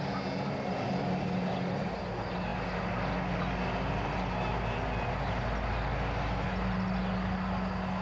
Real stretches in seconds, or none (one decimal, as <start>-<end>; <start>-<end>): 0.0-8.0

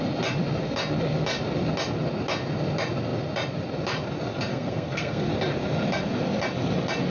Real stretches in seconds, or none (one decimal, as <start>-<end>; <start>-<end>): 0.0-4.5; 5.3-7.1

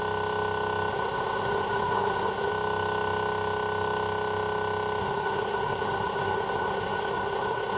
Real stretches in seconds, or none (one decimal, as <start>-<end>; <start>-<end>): 0.0-0.9; 2.5-5.0

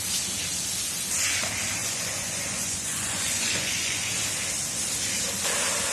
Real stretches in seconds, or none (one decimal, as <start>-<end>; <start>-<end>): 0.0-1.8; 4.1-5.9

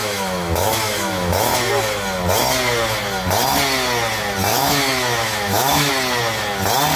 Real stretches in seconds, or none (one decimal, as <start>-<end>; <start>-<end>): 1.7-4.5; 5.9-7.0

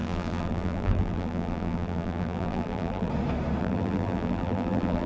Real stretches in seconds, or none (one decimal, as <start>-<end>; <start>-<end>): 3.1-3.6